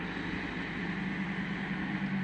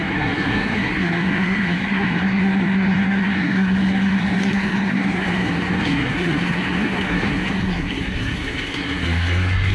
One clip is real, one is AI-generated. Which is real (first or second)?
first